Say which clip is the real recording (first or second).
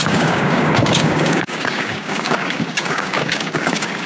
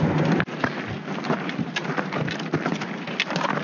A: second